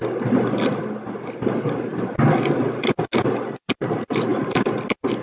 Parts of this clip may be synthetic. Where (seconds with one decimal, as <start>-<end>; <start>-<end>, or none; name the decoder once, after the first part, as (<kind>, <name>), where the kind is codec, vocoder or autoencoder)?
none